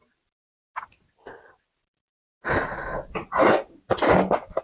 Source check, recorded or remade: recorded